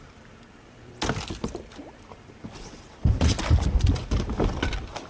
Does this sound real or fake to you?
real